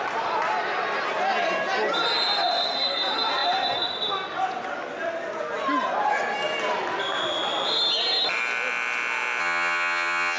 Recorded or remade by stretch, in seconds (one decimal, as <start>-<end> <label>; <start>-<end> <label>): 0.0-9.4 recorded; 9.4-10.4 remade